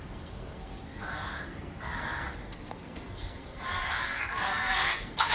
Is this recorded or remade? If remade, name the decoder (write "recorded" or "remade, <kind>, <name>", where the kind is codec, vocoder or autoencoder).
remade, codec, SNAC